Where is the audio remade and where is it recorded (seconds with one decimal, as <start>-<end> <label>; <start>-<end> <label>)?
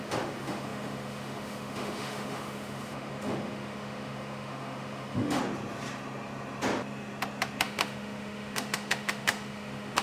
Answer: 0.0-5.4 remade; 5.4-7.6 recorded; 7.6-10.0 remade